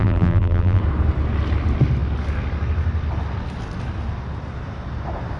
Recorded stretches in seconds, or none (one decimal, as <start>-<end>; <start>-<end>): 0.8-5.4